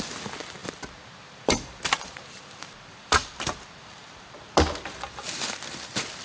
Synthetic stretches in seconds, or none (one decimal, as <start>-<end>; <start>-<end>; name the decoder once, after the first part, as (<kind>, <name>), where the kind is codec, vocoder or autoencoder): 0.0-6.2 (vocoder, BigVGAN v2)